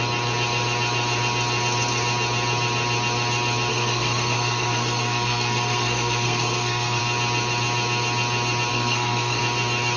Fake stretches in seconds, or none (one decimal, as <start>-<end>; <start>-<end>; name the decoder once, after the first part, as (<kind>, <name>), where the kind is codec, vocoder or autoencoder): 3.7-7.0 (codec, SNAC); 8.7-9.4